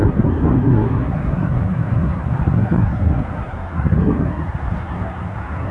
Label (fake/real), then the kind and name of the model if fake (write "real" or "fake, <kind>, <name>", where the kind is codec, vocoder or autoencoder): fake, codec, SNAC